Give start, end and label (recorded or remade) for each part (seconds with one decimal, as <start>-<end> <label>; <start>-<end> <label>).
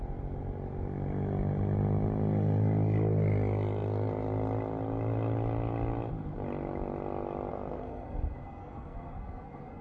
0.0-7.5 recorded; 7.5-9.8 remade